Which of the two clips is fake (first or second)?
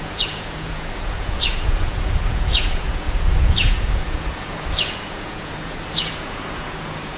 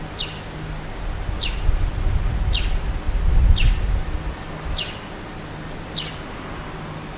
first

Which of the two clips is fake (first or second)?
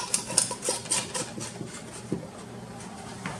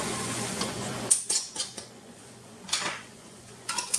second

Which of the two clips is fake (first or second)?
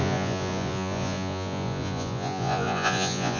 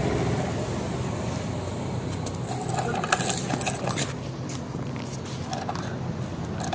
first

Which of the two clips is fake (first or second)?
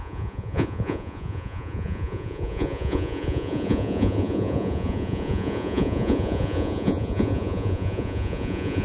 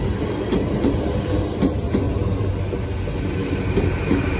first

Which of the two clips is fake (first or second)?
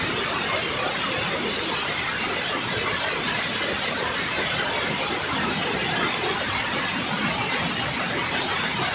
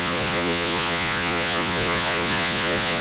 second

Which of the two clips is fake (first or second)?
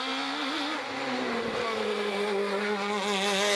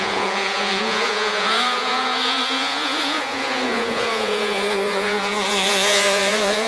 second